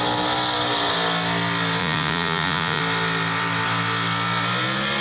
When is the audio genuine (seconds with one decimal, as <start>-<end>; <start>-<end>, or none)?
0.0-1.8; 2.8-5.0